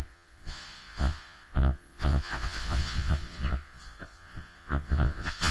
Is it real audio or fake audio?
fake